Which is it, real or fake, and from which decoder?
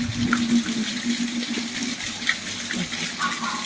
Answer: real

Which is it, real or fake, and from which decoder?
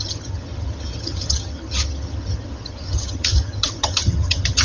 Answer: fake, vocoder, HiFi-GAN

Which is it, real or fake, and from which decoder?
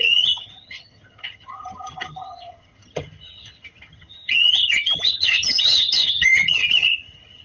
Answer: fake, vocoder, HiFi-GAN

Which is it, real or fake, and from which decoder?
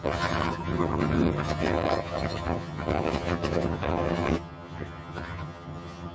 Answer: fake, vocoder, HiFi-GAN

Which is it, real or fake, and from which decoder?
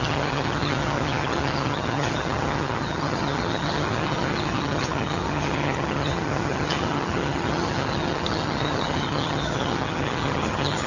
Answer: fake, vocoder, HiFi-GAN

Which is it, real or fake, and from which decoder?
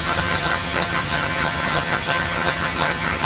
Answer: fake, vocoder, HiFi-GAN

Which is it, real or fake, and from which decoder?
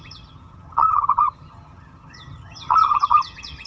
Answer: fake, vocoder, HiFi-GAN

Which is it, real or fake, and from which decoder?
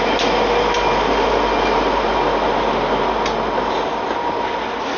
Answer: real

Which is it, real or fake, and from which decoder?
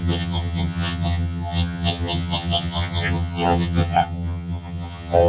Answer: fake, vocoder, HiFi-GAN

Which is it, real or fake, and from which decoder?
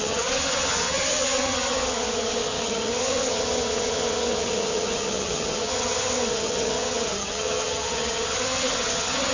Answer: fake, vocoder, HiFi-GAN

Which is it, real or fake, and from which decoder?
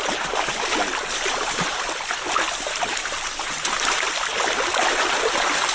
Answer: real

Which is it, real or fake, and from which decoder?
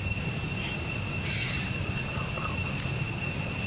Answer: real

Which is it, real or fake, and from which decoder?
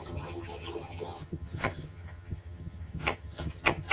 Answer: fake, vocoder, HiFi-GAN